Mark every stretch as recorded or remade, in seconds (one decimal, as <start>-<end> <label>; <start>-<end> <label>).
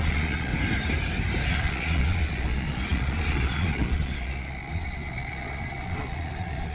0.0-0.5 remade; 0.5-1.5 recorded; 1.5-6.7 remade